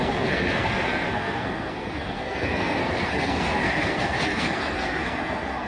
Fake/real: fake